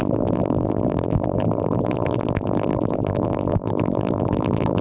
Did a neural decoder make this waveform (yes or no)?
yes